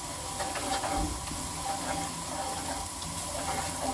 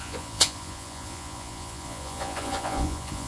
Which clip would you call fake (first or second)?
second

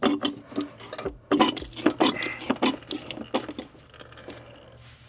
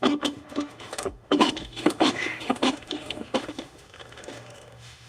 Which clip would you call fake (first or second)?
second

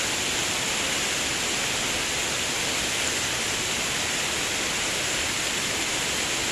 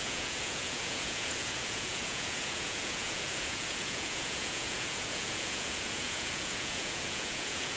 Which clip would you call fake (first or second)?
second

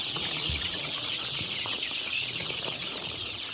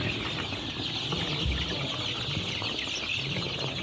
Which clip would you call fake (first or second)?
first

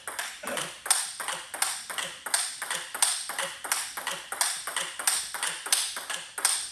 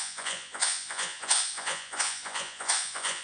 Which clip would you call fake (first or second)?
second